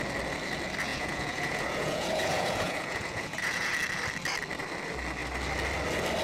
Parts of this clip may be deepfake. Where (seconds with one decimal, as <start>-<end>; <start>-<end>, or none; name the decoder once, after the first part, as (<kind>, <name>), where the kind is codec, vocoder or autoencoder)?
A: 0.9-3.7 (vocoder, Vocos)